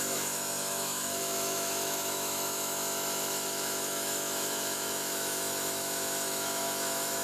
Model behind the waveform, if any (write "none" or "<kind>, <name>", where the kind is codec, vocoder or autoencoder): autoencoder, DAC-VAE